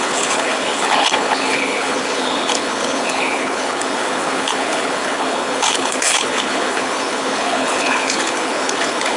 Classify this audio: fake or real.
fake